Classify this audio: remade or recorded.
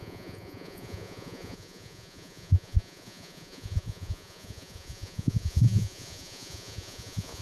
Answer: remade